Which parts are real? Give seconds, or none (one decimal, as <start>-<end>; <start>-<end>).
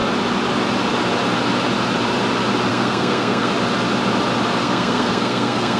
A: 0.0-2.7; 3.5-4.6